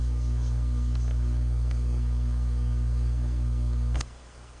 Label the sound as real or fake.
fake